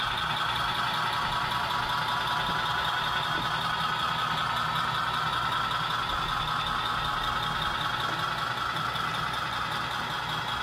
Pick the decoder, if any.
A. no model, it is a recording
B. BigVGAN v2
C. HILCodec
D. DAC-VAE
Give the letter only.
A